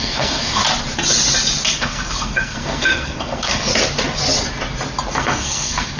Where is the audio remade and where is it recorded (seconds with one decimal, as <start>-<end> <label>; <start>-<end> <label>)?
0.0-0.6 remade; 0.6-1.8 recorded; 1.8-3.7 remade; 3.7-5.1 recorded; 5.1-6.0 remade